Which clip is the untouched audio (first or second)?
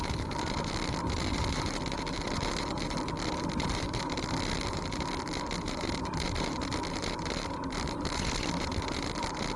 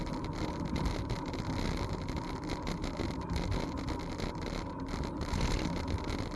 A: second